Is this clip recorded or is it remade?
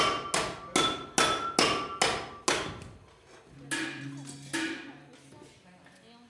recorded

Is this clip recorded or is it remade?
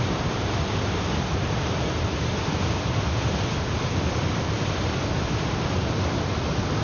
recorded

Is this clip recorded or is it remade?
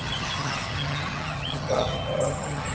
remade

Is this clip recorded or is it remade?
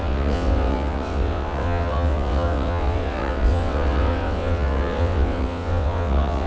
remade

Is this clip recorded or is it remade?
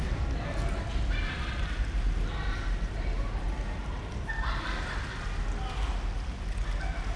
recorded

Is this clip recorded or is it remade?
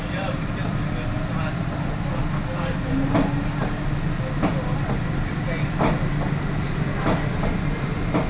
recorded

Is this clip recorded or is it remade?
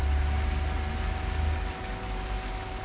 recorded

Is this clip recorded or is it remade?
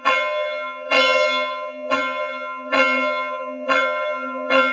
remade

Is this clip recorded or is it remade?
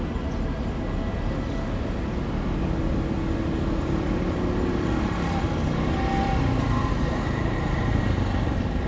recorded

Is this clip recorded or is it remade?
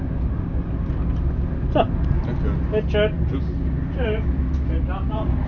recorded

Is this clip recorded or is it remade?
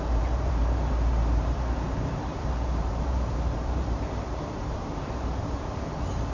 remade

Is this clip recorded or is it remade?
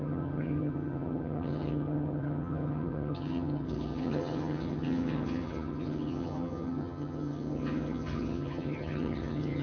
remade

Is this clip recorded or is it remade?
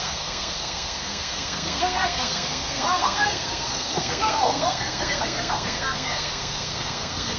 remade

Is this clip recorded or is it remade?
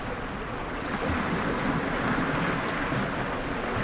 recorded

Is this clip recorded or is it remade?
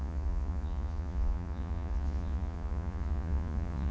remade